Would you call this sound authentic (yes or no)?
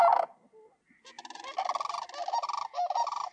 yes